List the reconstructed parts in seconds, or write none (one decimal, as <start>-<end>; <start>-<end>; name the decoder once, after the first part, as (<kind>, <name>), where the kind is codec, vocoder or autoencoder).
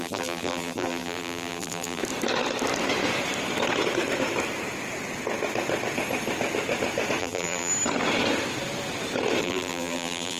0.0-2.0 (vocoder, BigVGAN v2); 7.2-7.7; 9.4-10.4